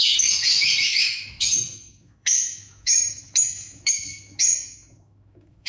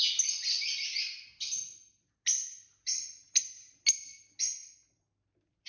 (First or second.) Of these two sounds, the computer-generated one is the first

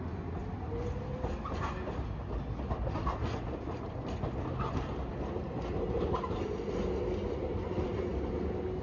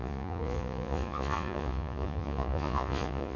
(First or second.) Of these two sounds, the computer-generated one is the second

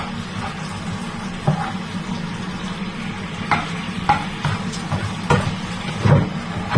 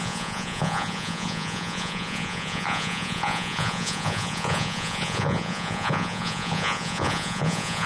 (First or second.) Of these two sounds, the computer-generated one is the second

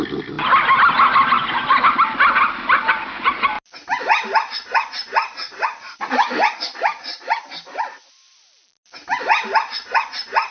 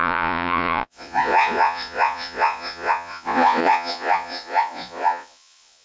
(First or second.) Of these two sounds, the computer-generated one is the second